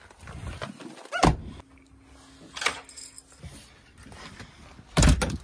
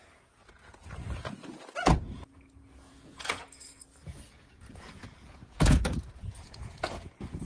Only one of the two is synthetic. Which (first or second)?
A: second